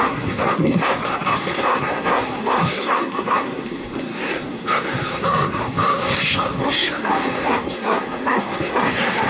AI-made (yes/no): yes